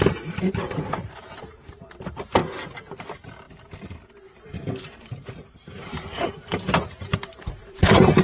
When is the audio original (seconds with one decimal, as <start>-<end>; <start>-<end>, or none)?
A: 2.4-4.4